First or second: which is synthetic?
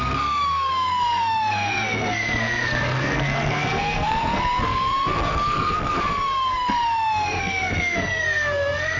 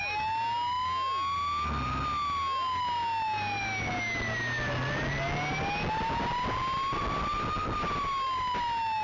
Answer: first